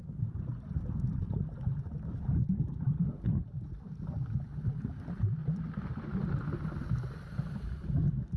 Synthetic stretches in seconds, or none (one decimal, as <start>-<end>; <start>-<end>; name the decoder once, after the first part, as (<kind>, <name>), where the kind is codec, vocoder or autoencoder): none